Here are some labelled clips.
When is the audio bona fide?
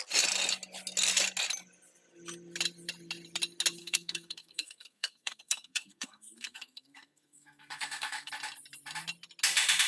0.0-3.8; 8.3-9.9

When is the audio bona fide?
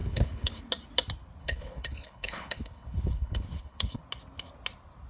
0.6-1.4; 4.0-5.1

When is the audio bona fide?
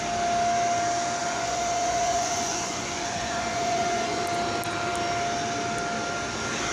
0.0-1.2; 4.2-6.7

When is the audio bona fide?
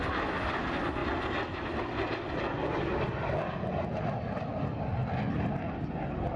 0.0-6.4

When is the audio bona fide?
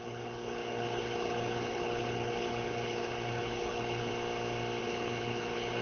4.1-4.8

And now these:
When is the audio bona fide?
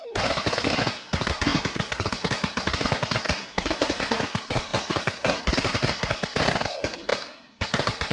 none